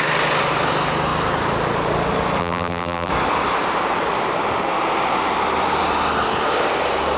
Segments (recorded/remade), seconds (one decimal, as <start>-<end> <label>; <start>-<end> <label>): 0.0-2.4 recorded; 2.4-3.1 remade; 3.1-7.2 recorded